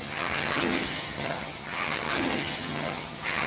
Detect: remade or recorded remade